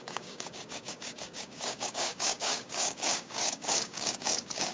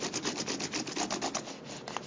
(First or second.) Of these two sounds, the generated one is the first